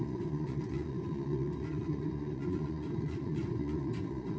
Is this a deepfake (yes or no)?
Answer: yes